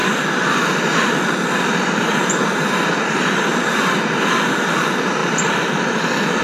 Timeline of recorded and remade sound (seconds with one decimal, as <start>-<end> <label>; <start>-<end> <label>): 0.0-3.8 remade; 3.8-5.2 recorded; 5.2-6.4 remade